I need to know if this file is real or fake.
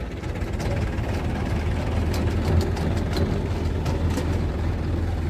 real